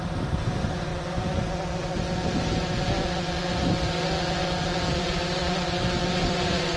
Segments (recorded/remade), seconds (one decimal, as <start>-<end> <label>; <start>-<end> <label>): 0.0-0.9 remade; 0.9-5.0 recorded; 5.0-5.4 remade; 5.4-6.3 recorded; 6.3-6.8 remade